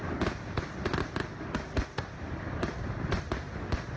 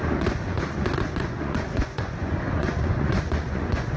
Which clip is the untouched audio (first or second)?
first